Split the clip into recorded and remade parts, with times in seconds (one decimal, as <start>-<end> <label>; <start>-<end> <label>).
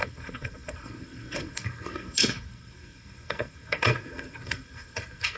0.0-5.4 remade